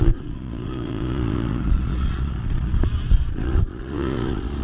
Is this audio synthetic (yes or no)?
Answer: yes